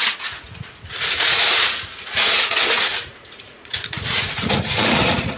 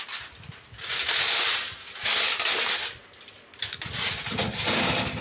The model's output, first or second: first